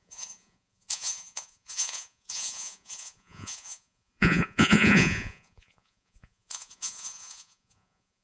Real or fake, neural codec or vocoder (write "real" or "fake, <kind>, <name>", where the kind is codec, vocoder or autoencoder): fake, vocoder, Vocos